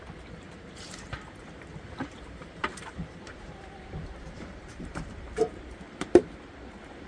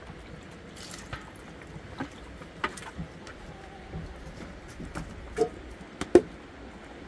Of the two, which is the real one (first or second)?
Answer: second